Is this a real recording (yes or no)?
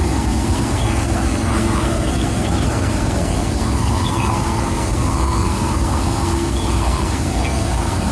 no